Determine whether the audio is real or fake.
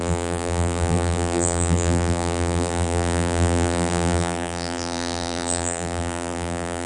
fake